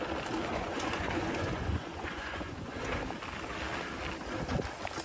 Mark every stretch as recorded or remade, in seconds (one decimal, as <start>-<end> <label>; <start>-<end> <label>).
0.0-0.5 recorded; 0.5-3.0 remade; 3.0-5.0 recorded